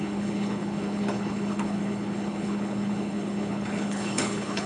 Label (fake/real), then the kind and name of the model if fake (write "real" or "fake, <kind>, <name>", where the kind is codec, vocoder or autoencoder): fake, codec, HILCodec